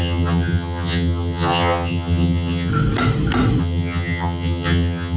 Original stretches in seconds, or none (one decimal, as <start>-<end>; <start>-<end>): 2.7-3.6